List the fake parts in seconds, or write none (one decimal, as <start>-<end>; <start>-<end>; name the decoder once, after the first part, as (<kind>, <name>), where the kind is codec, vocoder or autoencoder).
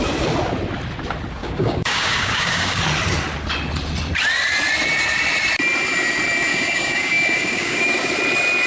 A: 1.4-2.8 (codec, DAC); 6.5-8.1